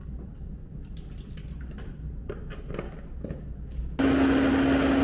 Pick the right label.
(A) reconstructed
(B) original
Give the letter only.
B